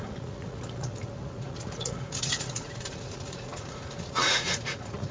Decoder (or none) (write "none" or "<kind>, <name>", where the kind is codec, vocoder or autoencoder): vocoder, Vocos